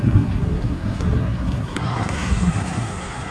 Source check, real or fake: fake